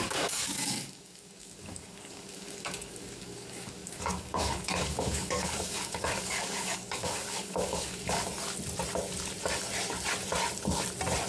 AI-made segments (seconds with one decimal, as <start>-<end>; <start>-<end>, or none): 0.0-8.3